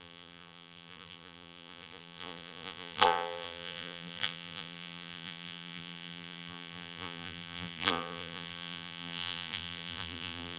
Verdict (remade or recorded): remade